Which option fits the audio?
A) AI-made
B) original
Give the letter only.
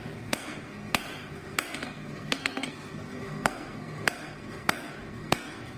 A